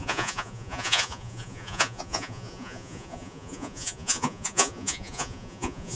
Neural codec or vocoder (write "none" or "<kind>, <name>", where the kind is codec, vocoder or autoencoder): vocoder, Vocos